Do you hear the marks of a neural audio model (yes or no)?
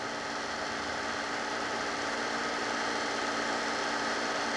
no